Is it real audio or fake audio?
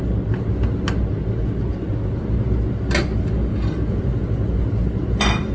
real